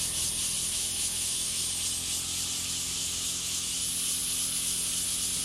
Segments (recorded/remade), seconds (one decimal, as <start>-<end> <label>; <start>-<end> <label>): 0.0-0.6 recorded; 0.6-1.7 remade; 1.7-3.0 recorded; 3.0-3.7 remade; 3.7-5.4 recorded

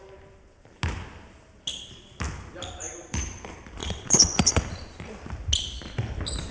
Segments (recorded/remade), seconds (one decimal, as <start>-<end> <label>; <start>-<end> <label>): 0.0-3.8 recorded; 3.8-4.6 remade; 4.6-6.5 recorded